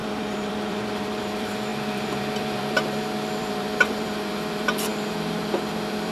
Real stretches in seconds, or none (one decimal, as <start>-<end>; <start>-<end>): none